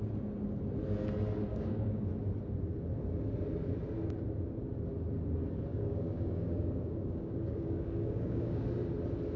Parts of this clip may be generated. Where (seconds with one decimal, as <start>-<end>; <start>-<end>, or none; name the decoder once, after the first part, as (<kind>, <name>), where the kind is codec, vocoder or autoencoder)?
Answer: 1.5-2.1 (codec, DAC); 5.7-8.6